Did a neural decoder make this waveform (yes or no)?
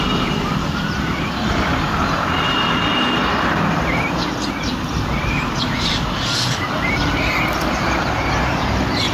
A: yes